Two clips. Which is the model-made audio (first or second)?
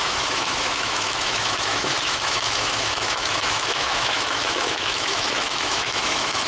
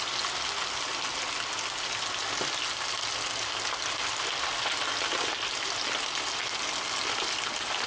first